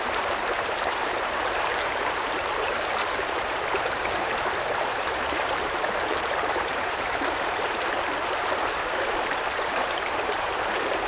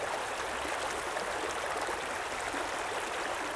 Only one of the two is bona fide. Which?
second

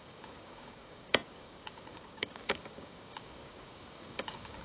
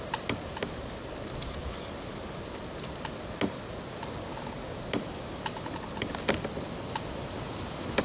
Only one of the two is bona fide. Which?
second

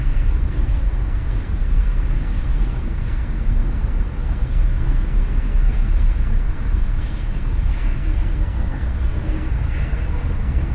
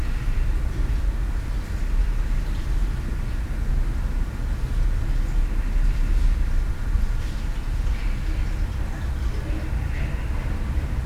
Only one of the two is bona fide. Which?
second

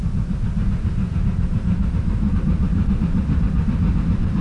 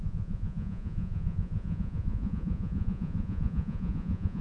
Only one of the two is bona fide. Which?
first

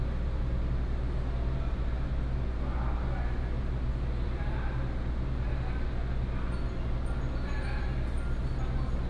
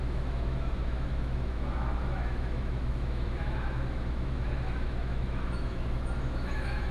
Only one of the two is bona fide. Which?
first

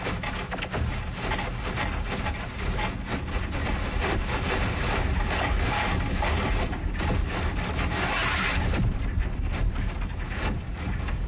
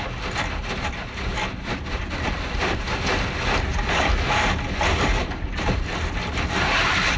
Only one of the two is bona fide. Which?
first